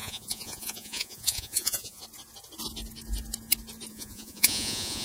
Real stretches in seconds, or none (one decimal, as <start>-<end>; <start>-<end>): 2.0-3.9